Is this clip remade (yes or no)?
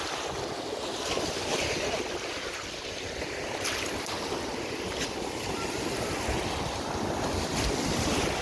no